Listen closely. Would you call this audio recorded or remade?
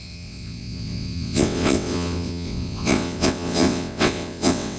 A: remade